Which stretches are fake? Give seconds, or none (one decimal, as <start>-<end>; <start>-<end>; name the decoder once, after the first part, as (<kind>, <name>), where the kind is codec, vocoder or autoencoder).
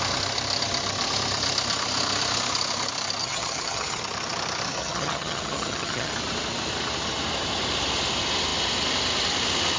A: 3.2-4.0 (vocoder, HiFi-GAN); 4.8-6.1